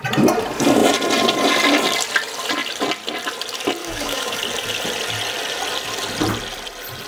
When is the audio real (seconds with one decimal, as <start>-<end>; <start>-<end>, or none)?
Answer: 0.0-3.8; 4.4-7.1